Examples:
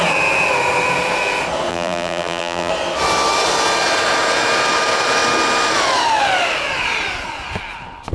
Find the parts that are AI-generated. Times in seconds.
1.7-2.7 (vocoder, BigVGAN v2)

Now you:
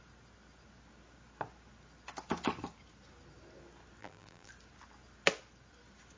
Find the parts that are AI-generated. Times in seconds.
4.0-4.5 (vocoder, BigVGAN v2)